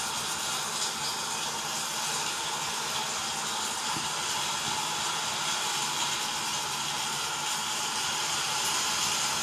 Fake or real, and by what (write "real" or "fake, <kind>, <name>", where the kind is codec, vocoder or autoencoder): real